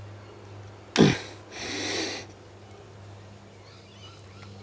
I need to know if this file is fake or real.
real